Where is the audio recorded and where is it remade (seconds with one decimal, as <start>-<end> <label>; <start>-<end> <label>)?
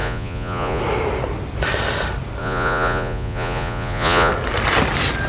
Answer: 0.0-0.8 remade; 0.8-2.4 recorded; 2.4-4.3 remade; 4.3-5.3 recorded